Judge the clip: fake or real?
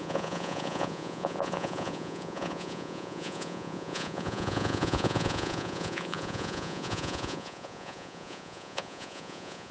fake